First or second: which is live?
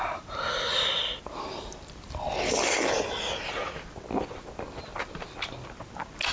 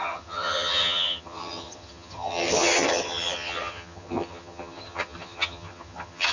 first